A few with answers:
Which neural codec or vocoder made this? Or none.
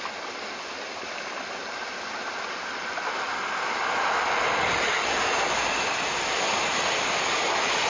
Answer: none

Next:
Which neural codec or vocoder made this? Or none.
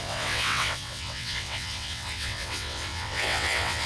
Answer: vocoder, WaveNeXt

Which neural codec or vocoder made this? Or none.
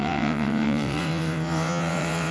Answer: vocoder, WaveNeXt